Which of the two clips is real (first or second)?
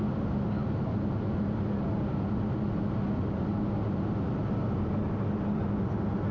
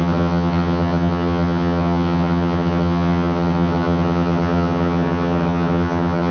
first